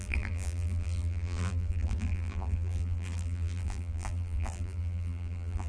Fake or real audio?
fake